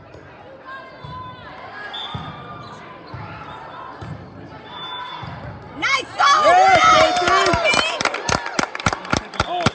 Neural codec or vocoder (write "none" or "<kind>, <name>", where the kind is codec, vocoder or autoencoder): none